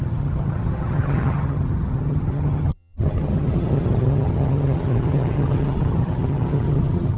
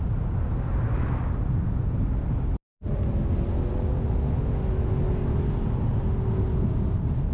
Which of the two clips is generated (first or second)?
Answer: first